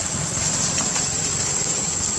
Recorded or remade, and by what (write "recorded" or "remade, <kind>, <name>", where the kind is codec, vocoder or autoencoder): recorded